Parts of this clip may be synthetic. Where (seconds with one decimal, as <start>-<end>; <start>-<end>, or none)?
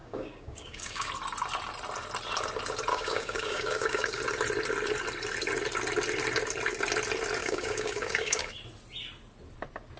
0.0-1.1; 2.9-4.2; 7.4-8.5